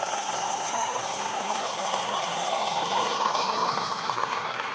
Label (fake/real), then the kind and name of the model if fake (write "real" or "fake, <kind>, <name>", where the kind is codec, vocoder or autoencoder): fake, codec, SNAC